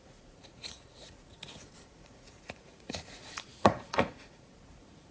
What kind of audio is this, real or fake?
fake